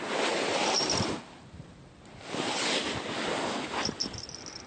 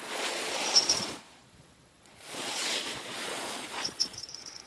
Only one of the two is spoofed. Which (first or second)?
second